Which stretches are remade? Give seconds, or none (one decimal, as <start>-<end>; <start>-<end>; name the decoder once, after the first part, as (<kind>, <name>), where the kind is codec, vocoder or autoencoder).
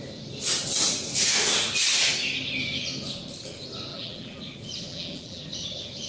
3.9-4.4 (vocoder, BigVGAN v2); 4.9-5.4